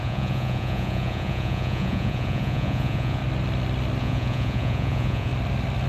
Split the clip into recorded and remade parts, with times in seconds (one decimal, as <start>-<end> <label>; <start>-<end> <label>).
0.0-3.2 remade; 3.2-4.0 recorded; 4.0-5.3 remade; 5.3-5.9 recorded